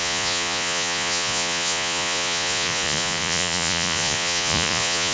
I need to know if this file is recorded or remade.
remade